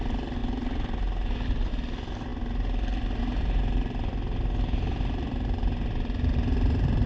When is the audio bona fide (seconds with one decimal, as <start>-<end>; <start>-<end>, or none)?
0.0-7.1

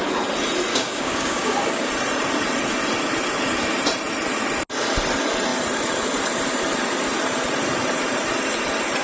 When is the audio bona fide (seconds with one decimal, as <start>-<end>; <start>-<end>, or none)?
0.0-0.7; 1.9-9.0

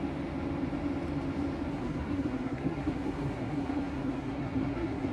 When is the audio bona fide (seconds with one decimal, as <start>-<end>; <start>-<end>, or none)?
0.0-1.7

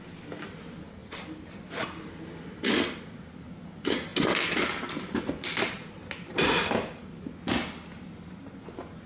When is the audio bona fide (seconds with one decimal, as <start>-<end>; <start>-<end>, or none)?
0.0-9.1

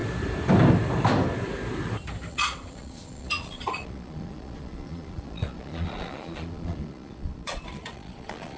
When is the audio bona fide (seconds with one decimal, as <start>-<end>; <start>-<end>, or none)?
0.0-2.3